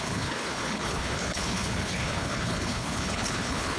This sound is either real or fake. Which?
fake